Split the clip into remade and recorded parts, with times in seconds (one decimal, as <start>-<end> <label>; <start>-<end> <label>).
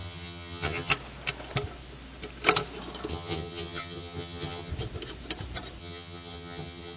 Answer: 0.0-0.9 remade; 0.9-3.1 recorded; 3.1-4.7 remade; 4.7-5.8 recorded; 5.8-7.0 remade